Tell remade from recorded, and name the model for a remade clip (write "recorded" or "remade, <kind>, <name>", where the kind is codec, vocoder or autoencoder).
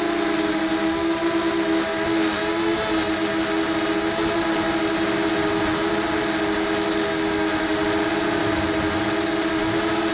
recorded